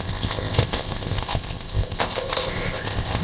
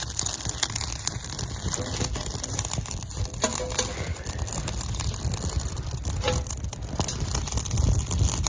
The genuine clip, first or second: second